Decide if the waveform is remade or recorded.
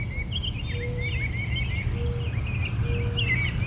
recorded